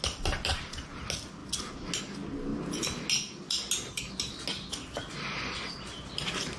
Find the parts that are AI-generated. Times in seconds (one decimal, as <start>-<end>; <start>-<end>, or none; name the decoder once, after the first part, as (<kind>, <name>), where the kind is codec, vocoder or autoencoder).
none